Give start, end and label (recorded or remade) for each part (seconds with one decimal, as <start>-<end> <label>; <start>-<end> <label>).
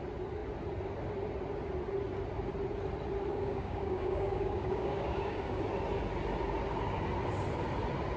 0.0-3.3 recorded; 3.3-5.6 remade; 5.6-8.2 recorded